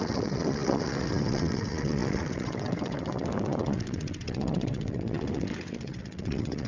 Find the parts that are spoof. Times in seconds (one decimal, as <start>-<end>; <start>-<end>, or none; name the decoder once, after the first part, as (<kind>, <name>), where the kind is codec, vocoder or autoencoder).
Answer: 0.0-6.7 (vocoder, WaveNeXt)